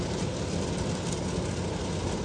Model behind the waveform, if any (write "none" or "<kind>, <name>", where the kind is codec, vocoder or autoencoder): none